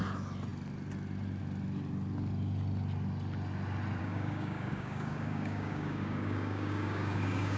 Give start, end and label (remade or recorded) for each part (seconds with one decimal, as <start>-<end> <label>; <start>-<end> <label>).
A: 0.0-4.0 recorded; 4.0-7.6 remade